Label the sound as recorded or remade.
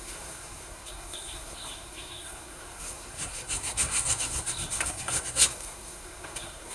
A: remade